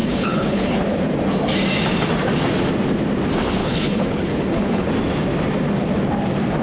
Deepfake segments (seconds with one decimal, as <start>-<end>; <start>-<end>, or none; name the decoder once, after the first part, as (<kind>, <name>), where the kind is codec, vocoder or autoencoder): 0.0-0.8 (codec, HILCodec); 3.6-4.9